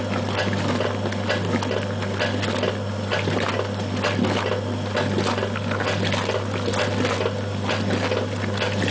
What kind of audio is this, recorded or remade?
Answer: recorded